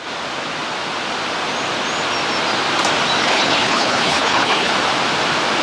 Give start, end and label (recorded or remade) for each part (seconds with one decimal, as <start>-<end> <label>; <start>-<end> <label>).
0.0-3.2 recorded; 3.2-4.7 remade; 4.7-5.6 recorded